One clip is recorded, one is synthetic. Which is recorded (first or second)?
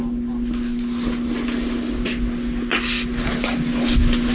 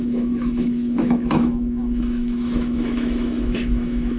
first